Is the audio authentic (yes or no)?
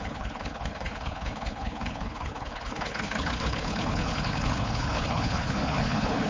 no